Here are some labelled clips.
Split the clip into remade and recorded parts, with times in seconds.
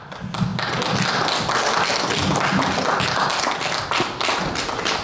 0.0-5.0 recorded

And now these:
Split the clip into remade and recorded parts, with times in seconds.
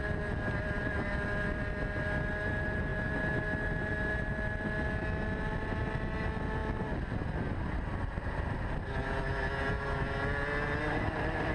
0.0-11.5 recorded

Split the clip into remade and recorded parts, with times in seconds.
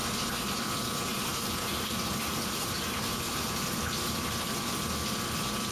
0.0-1.1 recorded; 1.1-4.5 remade; 4.5-5.7 recorded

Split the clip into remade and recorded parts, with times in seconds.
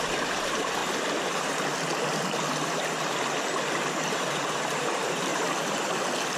0.0-0.8 remade; 0.8-4.3 recorded; 4.3-5.3 remade; 5.3-6.4 recorded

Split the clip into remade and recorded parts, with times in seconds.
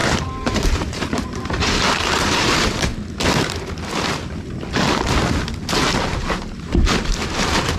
0.0-2.9 remade; 2.9-6.0 recorded; 6.0-7.8 remade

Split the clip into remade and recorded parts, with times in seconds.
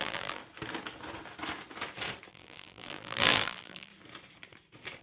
0.0-0.4 remade; 0.4-2.3 recorded; 2.3-3.9 remade; 3.9-5.0 recorded